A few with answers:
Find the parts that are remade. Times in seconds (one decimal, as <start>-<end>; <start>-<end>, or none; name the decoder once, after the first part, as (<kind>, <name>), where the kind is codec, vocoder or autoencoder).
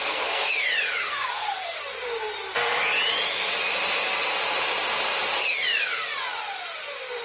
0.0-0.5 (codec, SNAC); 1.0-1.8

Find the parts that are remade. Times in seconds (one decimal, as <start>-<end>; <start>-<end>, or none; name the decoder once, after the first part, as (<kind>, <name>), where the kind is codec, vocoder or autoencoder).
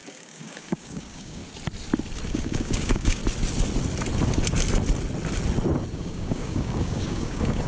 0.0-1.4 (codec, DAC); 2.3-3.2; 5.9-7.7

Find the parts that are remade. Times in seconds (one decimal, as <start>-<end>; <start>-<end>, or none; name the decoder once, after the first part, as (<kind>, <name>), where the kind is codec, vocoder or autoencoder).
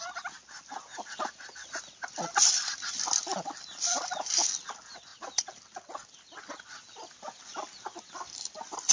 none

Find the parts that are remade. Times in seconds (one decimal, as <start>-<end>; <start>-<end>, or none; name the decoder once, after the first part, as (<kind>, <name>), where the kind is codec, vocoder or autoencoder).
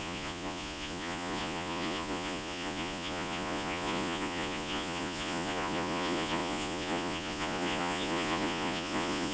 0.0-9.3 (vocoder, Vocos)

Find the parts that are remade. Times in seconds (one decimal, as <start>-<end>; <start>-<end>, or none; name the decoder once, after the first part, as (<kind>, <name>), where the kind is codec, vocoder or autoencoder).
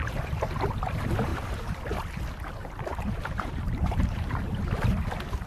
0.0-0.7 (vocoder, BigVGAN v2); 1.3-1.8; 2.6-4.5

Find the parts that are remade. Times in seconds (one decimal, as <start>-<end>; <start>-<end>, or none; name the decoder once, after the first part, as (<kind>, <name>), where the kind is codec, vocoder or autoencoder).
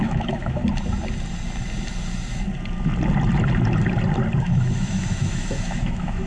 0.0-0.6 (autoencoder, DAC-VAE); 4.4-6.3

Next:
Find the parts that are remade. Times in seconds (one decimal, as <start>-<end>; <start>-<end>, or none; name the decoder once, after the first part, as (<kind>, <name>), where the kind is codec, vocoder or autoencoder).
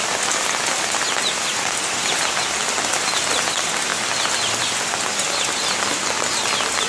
none